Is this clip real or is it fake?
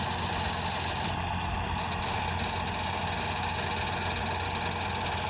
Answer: real